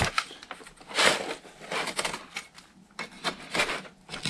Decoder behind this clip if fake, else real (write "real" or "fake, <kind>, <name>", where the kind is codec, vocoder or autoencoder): real